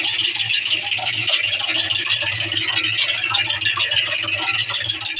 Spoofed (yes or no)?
no